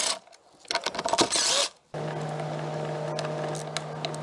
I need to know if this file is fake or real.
real